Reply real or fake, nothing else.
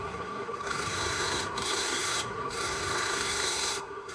fake